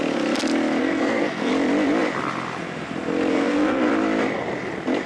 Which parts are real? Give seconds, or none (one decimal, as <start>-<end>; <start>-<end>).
0.0-0.8; 1.5-3.3; 3.9-5.1